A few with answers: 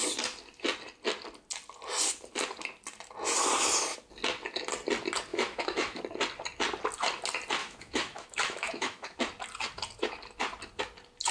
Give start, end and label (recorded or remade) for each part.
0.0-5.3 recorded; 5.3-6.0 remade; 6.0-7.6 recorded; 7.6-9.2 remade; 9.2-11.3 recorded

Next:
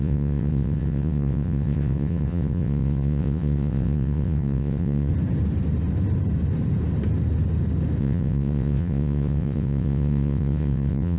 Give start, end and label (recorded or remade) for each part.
0.0-5.1 remade; 5.1-8.0 recorded; 8.0-11.2 remade

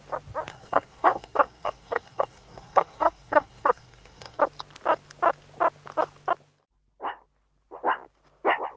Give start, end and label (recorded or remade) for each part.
0.0-0.5 recorded; 0.5-4.4 remade; 4.4-8.8 recorded

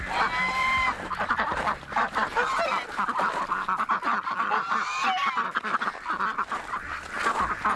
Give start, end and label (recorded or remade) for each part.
0.0-0.6 recorded; 0.6-4.4 remade; 4.4-7.8 recorded